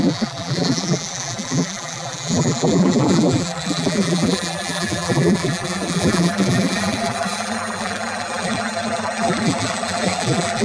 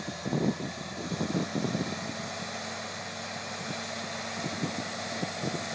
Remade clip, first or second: first